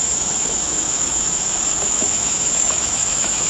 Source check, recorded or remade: remade